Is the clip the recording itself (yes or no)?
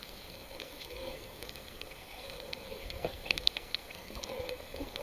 no